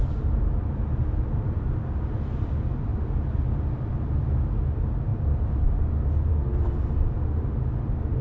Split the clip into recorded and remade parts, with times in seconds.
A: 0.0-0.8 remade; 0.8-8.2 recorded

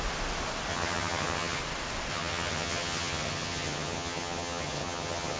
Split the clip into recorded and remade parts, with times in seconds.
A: 0.0-0.7 recorded; 0.7-1.6 remade; 1.6-2.1 recorded; 2.1-5.4 remade

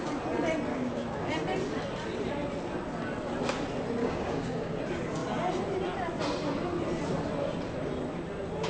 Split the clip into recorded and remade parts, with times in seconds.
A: 0.0-0.7 recorded; 0.7-1.3 remade; 1.3-4.0 recorded; 4.0-4.8 remade; 4.8-8.7 recorded

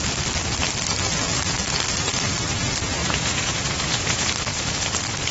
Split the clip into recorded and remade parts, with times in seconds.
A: 0.0-3.0 recorded; 3.0-4.3 remade; 4.3-5.3 recorded

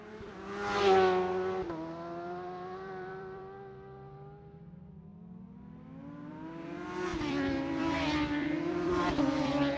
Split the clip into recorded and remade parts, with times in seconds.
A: 0.0-1.6 recorded; 1.6-3.4 remade; 3.4-7.1 recorded; 7.1-9.8 remade